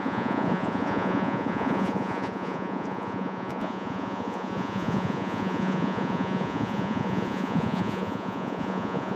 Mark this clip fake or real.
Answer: fake